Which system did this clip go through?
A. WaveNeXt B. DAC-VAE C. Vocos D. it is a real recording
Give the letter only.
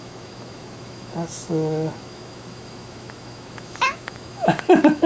B